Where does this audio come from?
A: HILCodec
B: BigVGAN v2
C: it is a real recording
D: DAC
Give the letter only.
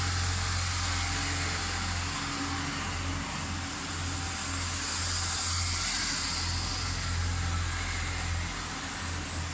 C